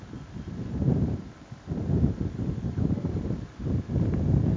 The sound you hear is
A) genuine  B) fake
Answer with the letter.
B